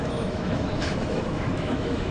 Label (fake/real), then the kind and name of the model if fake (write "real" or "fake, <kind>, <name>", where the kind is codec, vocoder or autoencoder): fake, autoencoder, DAC-VAE